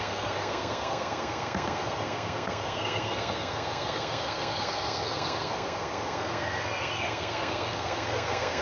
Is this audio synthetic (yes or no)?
yes